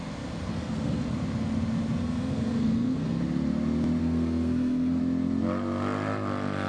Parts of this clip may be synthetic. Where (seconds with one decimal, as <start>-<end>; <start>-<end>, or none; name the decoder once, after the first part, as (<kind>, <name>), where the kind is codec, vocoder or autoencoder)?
0.5-1.1 (codec, SNAC); 2.0-3.2; 4.0-5.0